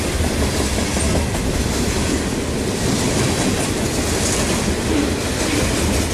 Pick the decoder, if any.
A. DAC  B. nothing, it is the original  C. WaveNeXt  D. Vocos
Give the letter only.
B